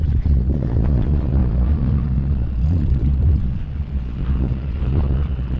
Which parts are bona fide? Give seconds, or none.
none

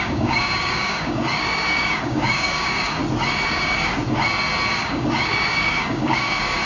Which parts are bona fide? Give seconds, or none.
3.0-3.5; 3.9-4.7

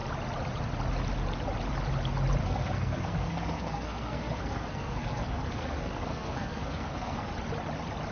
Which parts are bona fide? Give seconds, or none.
0.0-2.4; 7.3-8.1

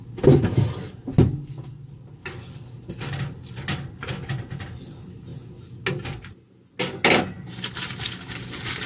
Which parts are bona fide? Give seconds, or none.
0.0-3.7; 4.3-8.9

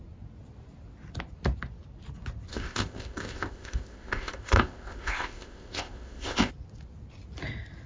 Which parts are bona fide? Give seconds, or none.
0.0-2.5; 6.5-7.9

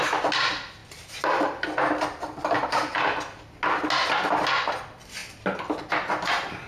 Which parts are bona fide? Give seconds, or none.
0.0-6.7